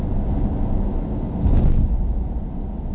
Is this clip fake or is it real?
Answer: real